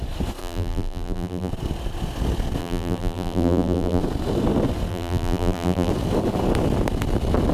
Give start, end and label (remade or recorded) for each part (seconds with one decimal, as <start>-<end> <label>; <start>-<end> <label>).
0.0-0.4 recorded; 0.4-1.5 remade; 1.5-2.6 recorded; 2.6-4.0 remade; 4.0-4.9 recorded; 4.9-5.9 remade; 5.9-7.5 recorded